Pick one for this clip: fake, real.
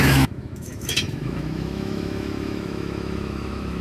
fake